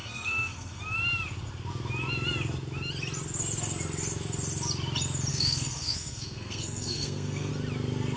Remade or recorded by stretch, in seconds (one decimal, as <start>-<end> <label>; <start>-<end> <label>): 0.0-0.8 remade; 0.8-5.3 recorded; 5.3-7.5 remade; 7.5-8.2 recorded